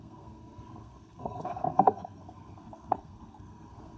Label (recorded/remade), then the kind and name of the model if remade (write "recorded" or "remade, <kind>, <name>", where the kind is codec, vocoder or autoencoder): remade, codec, SNAC